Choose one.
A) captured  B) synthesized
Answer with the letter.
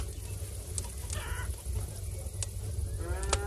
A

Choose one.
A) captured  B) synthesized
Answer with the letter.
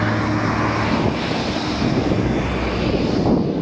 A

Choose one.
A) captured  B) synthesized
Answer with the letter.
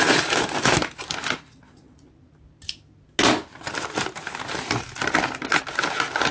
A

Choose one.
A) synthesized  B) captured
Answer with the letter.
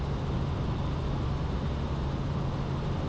B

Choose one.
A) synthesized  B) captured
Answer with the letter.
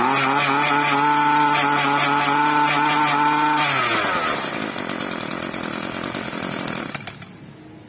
B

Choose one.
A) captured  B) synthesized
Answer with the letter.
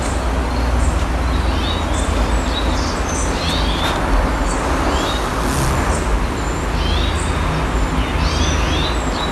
A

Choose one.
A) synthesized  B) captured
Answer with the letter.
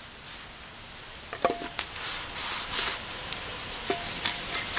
B